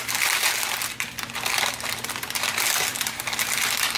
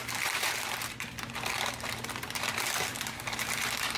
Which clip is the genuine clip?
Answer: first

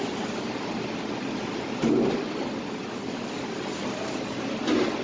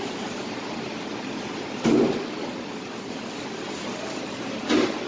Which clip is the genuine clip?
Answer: first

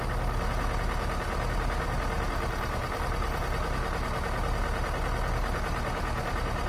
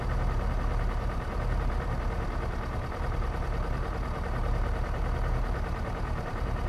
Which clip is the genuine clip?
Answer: first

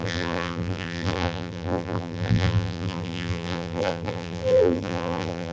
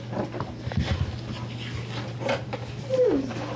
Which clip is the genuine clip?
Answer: second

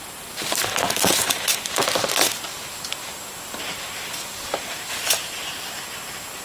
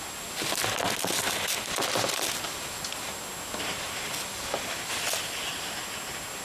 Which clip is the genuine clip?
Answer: second